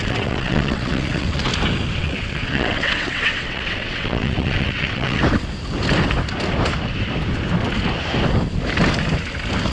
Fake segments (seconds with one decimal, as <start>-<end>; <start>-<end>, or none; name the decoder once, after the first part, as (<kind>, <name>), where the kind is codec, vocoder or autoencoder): 0.0-1.5 (vocoder, WaveNeXt); 2.0-5.2